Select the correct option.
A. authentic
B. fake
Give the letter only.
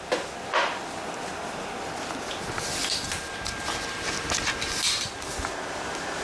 A